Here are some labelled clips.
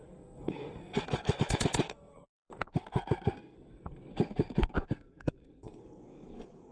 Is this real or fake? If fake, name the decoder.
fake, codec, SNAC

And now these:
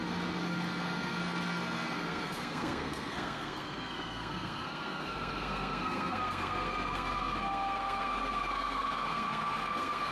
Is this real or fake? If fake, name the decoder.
fake, codec, SNAC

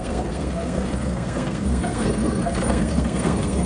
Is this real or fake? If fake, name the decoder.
fake, codec, SNAC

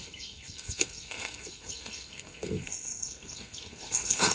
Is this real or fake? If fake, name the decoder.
fake, codec, SNAC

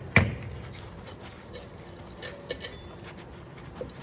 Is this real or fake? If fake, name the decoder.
real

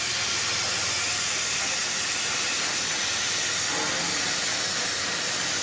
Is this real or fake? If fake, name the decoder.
real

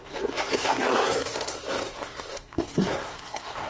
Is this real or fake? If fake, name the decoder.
fake, codec, SNAC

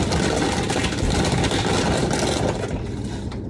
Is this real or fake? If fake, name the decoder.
real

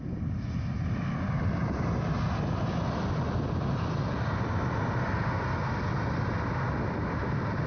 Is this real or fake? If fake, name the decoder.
real